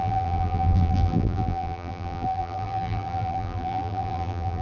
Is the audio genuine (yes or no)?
no